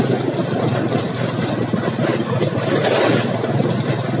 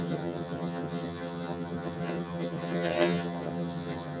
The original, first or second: first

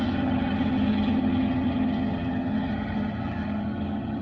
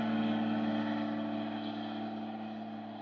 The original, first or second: second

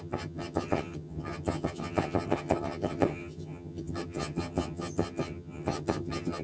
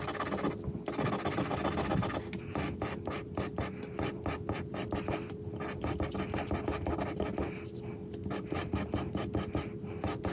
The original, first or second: second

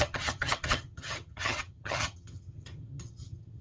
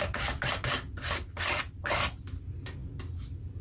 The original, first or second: second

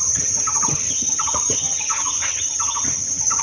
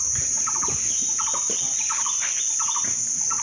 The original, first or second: second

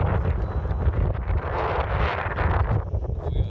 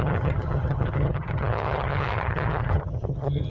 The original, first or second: first